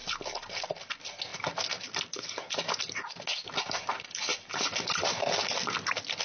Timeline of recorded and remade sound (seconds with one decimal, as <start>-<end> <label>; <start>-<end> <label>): 0.0-6.2 recorded